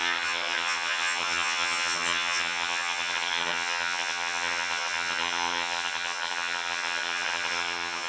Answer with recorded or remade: remade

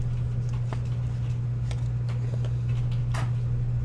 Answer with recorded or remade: recorded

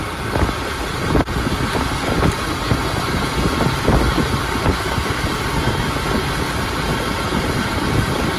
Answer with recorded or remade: recorded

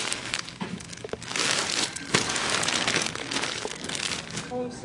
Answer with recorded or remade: remade